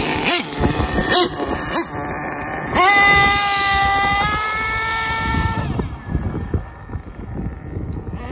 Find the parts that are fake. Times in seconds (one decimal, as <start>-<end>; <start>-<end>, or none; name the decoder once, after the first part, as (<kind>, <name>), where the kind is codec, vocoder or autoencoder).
none